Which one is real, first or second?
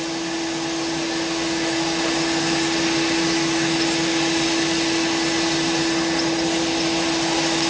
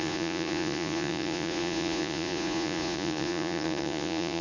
first